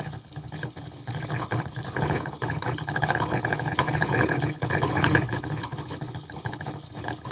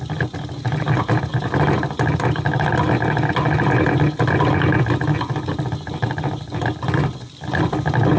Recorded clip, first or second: second